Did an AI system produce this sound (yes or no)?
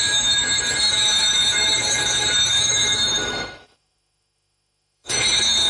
yes